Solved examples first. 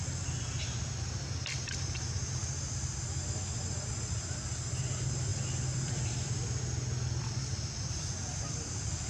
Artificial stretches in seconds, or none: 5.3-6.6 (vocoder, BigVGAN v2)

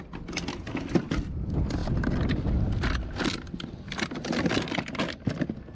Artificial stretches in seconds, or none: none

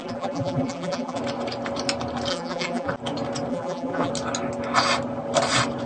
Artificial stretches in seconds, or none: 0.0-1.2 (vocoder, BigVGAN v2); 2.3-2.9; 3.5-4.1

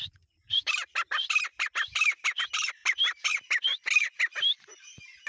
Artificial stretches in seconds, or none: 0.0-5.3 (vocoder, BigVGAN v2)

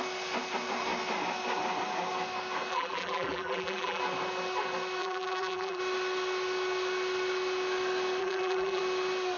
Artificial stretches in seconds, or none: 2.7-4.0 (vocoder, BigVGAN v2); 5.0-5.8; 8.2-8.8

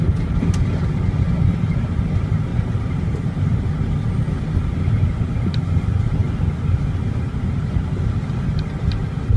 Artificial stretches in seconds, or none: 2.5-3.7 (vocoder, BigVGAN v2)